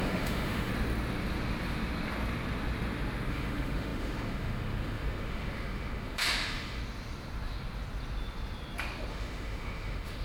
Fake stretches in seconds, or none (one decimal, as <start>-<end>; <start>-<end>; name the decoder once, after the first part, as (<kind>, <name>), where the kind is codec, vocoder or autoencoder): 0.0-0.7 (autoencoder, DAC-VAE); 3.3-6.8; 9.1-10.2